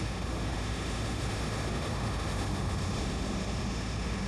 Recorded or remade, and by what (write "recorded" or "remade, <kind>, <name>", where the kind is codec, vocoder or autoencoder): remade, autoencoder, DAC-VAE